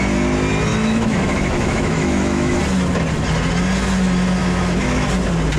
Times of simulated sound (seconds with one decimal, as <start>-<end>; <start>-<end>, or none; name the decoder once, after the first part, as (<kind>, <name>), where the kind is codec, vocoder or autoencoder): 0.7-2.6 (autoencoder, DAC-VAE); 4.4-5.1